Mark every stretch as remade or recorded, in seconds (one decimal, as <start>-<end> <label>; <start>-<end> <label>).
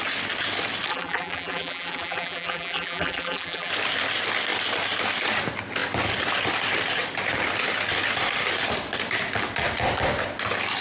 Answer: 0.0-0.9 recorded; 0.9-3.7 remade; 3.7-10.8 recorded